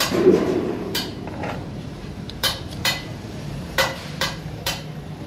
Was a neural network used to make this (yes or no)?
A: yes